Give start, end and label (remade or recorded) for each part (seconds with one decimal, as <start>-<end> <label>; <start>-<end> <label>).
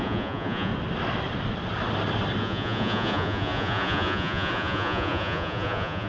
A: 0.0-0.7 remade; 0.7-2.4 recorded; 2.4-6.1 remade